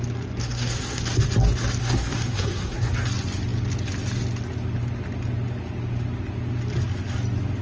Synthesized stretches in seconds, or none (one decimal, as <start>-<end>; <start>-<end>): 0.4-1.0; 1.8-2.9